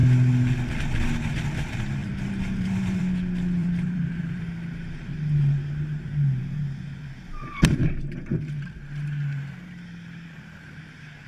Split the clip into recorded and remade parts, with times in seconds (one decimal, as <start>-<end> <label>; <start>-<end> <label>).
0.0-2.0 recorded; 2.0-3.0 remade; 3.0-3.6 recorded; 3.6-4.4 remade; 4.4-11.3 recorded